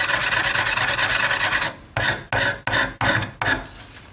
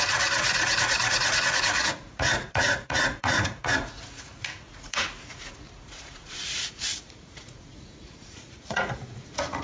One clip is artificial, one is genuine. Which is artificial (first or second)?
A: second